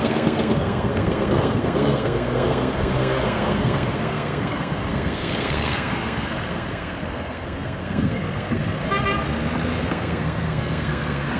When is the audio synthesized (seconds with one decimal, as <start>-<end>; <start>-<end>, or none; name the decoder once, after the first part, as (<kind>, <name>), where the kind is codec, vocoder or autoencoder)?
0.0-8.8 (codec, SNAC); 9.8-11.4